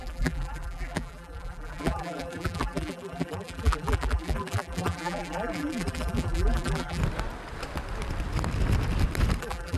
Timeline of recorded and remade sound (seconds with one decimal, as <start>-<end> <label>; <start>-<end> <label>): 0.0-7.0 remade; 7.0-9.4 recorded; 9.4-9.8 remade